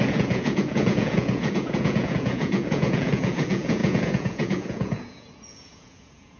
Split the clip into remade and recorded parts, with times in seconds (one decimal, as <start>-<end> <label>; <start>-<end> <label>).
0.0-6.4 remade